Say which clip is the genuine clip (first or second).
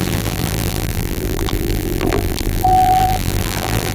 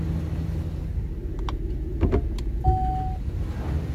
second